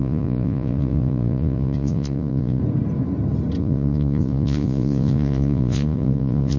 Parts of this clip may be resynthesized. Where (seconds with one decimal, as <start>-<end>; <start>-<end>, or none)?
0.0-2.6; 3.6-6.6